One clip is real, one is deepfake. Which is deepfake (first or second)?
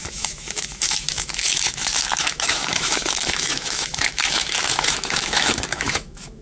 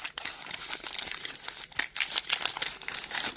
first